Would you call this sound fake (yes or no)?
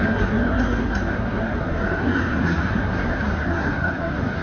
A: yes